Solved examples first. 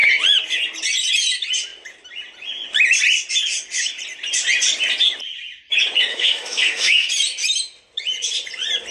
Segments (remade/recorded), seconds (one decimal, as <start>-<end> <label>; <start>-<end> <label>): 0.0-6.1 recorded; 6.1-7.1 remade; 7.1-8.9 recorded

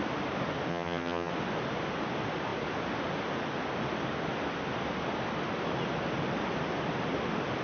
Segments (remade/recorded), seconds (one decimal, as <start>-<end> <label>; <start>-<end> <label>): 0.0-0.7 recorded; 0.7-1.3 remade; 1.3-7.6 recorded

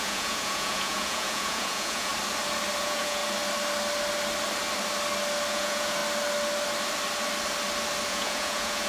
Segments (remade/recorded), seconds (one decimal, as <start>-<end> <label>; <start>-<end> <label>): 0.0-2.1 remade; 2.1-2.8 recorded; 2.8-3.2 remade; 3.2-5.5 recorded; 5.5-6.0 remade; 6.0-8.1 recorded; 8.1-8.9 remade

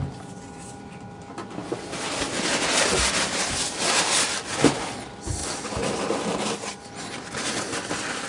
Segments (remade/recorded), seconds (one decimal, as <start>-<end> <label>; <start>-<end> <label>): 0.0-8.3 recorded